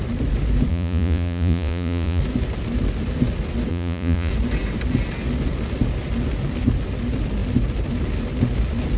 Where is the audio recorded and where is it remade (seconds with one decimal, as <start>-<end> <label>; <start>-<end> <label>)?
0.0-0.7 recorded; 0.7-2.2 remade; 2.2-3.7 recorded; 3.7-4.3 remade; 4.3-9.0 recorded